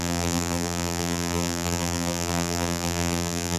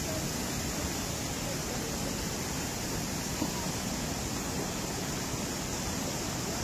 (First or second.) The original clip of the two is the second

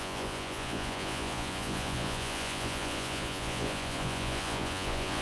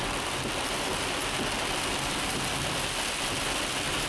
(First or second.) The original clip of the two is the second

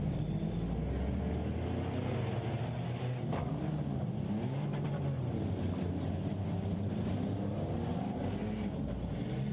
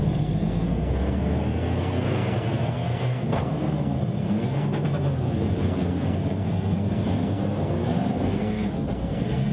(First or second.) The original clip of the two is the first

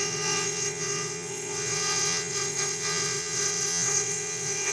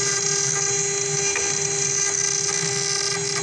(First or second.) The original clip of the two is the second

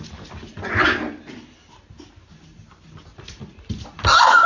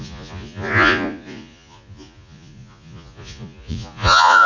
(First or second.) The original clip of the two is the first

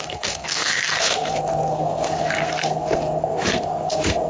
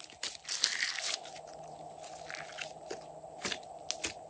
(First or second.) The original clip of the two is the second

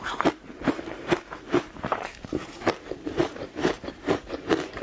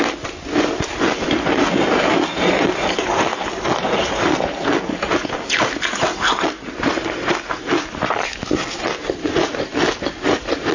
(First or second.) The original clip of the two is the second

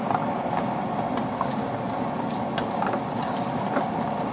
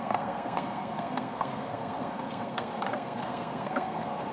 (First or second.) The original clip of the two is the first